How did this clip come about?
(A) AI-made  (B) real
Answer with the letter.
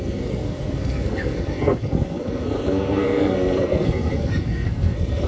A